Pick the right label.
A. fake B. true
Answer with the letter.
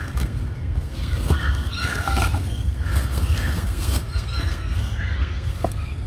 A